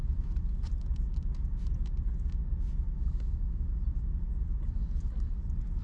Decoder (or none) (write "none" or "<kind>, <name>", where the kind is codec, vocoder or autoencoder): none